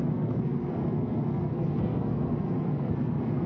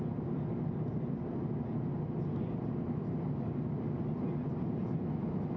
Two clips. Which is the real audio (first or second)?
second